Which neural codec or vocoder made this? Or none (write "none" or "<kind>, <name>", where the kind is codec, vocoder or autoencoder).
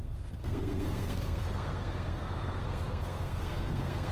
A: codec, SNAC